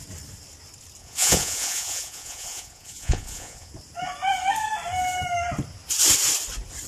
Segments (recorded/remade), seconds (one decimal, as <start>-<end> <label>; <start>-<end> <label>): 0.0-1.0 recorded; 1.0-3.7 remade; 3.7-6.9 recorded